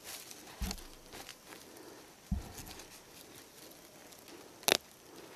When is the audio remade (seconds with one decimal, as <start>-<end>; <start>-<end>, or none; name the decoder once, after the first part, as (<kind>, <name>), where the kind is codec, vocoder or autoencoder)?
none